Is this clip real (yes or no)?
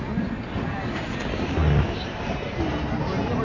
yes